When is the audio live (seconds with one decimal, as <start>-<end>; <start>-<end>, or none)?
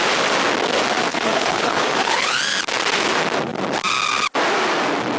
0.0-1.1; 2.4-5.2